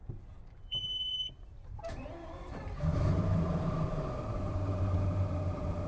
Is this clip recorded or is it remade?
remade